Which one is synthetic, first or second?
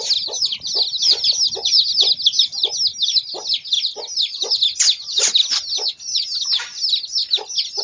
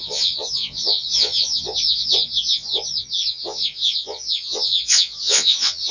second